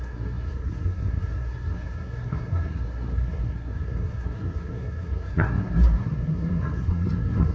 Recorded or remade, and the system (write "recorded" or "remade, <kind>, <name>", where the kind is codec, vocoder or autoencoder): remade, codec, SNAC